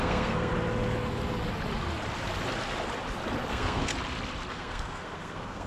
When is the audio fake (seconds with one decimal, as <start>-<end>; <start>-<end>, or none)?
0.0-0.5; 3.5-3.9; 4.5-5.7